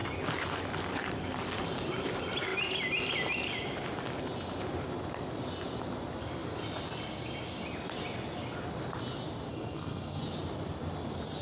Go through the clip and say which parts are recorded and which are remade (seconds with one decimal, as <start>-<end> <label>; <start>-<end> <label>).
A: 0.0-9.5 recorded; 9.5-10.2 remade; 10.2-11.4 recorded